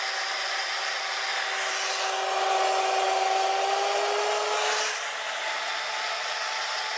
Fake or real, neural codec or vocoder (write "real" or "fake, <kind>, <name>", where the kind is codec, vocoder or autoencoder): real